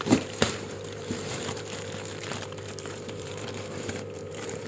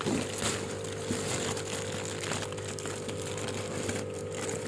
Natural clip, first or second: second